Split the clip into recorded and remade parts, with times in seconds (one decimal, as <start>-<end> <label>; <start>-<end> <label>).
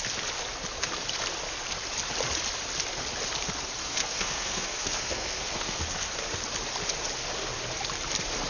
0.0-3.8 recorded; 3.8-5.8 remade; 5.8-8.5 recorded